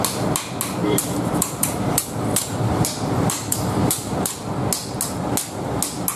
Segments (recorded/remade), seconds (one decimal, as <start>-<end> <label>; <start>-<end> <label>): 0.0-0.8 recorded; 0.8-4.5 remade; 4.5-6.2 recorded